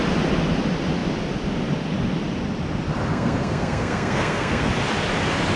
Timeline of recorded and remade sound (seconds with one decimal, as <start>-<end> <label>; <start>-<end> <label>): 0.0-3.1 recorded; 3.1-4.7 remade; 4.7-5.6 recorded

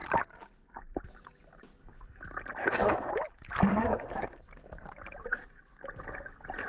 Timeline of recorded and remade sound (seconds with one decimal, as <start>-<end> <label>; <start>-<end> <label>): 0.0-2.6 recorded; 2.6-3.1 remade; 3.1-3.7 recorded; 3.7-4.4 remade; 4.4-6.7 recorded

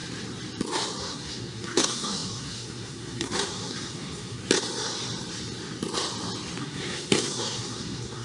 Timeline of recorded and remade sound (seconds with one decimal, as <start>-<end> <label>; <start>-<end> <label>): 0.0-1.0 recorded; 1.0-4.4 remade; 4.4-6.6 recorded; 6.6-8.2 remade

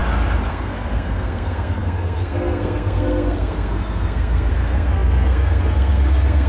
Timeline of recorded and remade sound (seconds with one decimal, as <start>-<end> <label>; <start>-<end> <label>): 0.0-0.5 recorded; 0.5-6.5 remade

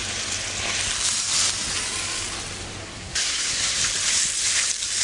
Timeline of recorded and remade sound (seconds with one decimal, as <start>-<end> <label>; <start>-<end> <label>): 0.0-2.8 recorded; 2.8-3.8 remade; 3.8-5.0 recorded

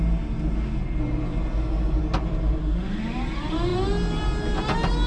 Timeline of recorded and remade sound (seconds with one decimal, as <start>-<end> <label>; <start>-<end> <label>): 0.0-5.1 recorded

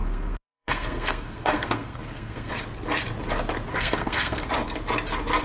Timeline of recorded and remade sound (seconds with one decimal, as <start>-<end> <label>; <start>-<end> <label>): 0.0-2.5 remade; 2.5-3.7 recorded; 3.7-4.5 remade; 4.5-5.4 recorded

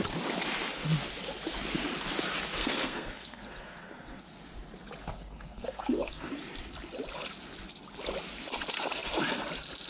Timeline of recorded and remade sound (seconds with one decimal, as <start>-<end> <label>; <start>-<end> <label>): 0.0-2.6 recorded; 2.6-4.2 remade; 4.2-5.0 recorded; 5.0-6.3 remade; 6.3-9.9 recorded